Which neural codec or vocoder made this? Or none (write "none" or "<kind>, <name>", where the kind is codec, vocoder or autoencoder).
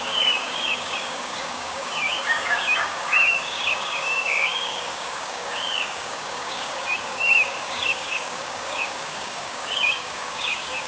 codec, DAC